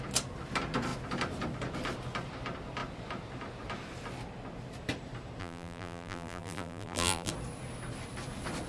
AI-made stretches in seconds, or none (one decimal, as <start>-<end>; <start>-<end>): 5.4-7.3